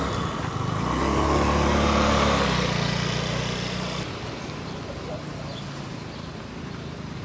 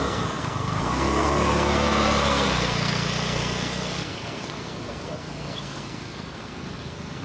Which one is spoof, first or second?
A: second